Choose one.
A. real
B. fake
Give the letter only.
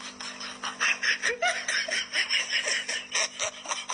A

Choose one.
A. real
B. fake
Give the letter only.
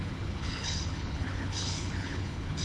B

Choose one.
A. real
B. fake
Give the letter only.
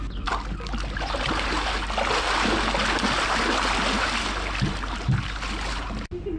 A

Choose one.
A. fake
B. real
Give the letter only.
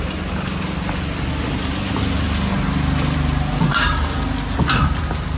B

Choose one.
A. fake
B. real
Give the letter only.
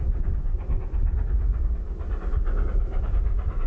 B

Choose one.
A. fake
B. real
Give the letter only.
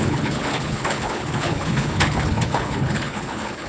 A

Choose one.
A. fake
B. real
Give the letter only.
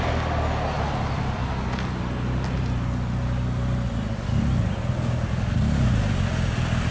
B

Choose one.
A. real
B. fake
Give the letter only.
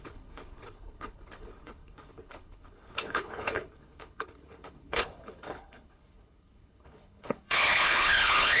B